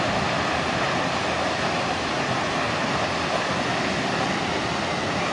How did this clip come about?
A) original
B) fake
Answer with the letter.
A